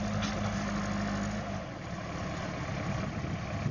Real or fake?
real